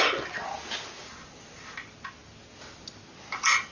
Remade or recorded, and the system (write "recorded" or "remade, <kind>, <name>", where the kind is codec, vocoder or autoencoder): recorded